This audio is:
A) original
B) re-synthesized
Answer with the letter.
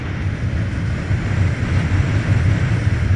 B